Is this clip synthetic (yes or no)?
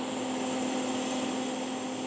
no